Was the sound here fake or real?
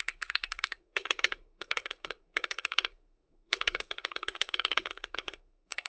fake